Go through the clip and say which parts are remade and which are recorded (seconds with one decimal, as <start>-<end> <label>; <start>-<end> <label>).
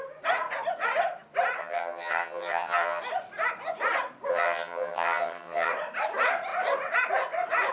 0.0-1.6 recorded; 1.6-3.0 remade; 3.0-4.3 recorded; 4.3-5.7 remade; 5.7-7.7 recorded